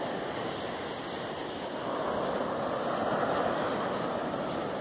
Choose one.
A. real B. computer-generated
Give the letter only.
A